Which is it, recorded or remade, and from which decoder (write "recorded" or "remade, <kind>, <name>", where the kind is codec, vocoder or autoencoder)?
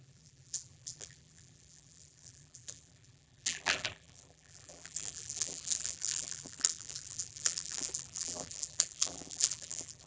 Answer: remade, vocoder, BigVGAN v2